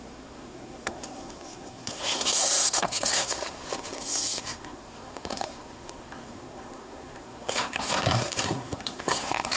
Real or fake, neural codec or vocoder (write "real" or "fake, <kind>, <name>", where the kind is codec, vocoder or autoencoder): fake, codec, SNAC